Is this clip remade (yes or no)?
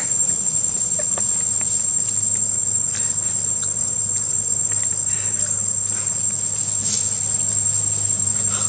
no